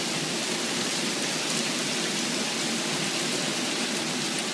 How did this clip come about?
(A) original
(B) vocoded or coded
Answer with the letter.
A